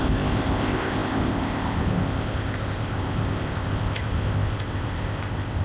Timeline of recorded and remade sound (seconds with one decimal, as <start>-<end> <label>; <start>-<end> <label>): 0.0-5.6 remade